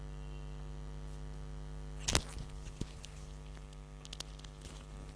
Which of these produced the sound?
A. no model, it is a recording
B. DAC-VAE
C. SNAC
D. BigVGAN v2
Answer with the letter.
A